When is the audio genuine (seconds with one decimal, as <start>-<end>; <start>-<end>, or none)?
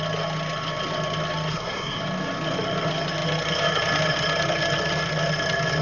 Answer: 0.0-1.5; 2.0-5.8